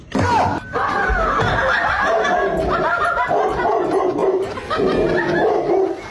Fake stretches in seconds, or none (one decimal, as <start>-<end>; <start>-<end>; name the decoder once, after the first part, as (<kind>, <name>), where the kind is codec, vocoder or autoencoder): none